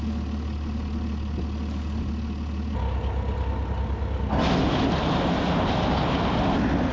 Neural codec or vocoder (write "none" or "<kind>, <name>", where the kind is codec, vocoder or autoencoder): none